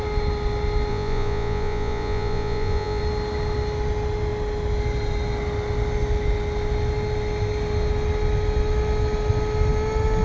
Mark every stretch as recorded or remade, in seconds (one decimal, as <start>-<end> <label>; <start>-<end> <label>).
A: 0.0-0.9 recorded; 0.9-3.0 remade; 3.0-10.2 recorded